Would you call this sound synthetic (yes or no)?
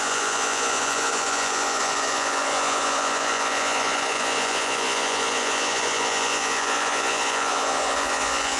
yes